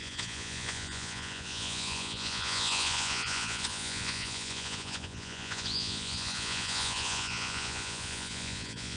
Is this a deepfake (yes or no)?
yes